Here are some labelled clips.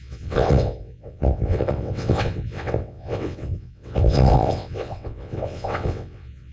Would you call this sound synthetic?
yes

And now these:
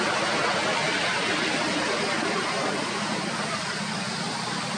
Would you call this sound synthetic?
no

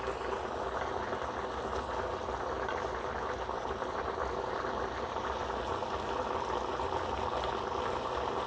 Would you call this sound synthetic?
no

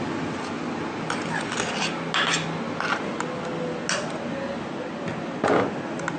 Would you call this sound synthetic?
no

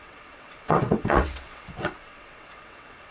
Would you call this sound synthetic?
yes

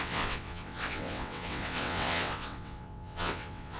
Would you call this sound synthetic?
yes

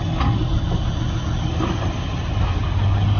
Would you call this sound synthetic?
no